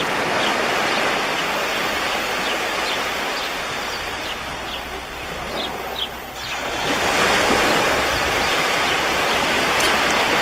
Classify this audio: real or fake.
real